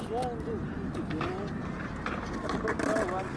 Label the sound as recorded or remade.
recorded